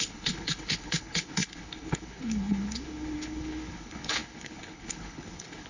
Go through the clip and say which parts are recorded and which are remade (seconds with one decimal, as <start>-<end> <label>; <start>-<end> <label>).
0.0-5.7 remade

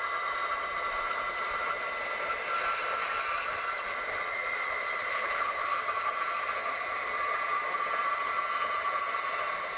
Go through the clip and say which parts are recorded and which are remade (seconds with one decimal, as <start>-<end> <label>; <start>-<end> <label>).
0.0-5.1 recorded; 5.1-5.6 remade; 5.6-9.8 recorded

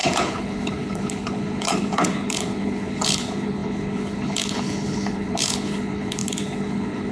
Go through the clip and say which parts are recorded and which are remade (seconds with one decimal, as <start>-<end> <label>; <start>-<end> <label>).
0.0-7.1 remade

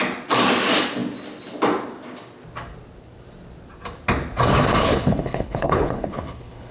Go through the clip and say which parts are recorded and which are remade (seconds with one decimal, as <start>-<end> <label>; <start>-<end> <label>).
0.0-4.8 recorded; 4.8-6.7 remade

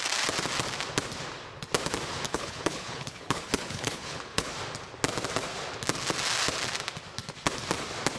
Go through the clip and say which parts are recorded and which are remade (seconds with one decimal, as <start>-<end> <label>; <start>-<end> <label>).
0.0-2.3 recorded; 2.3-4.5 remade; 4.5-8.2 recorded